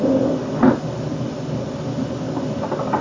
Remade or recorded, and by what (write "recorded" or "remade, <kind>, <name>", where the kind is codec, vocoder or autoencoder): recorded